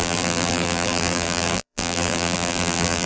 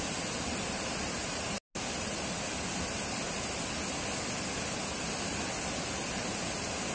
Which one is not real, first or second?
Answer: first